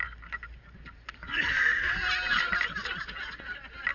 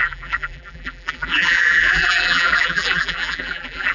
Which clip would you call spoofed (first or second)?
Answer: second